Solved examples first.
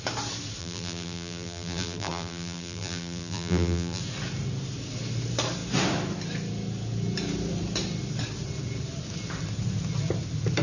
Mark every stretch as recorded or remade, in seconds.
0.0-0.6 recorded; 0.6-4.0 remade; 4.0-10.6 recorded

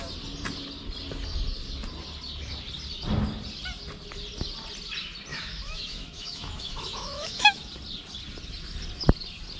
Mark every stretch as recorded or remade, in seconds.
0.0-5.3 recorded; 5.3-7.7 remade; 7.7-9.6 recorded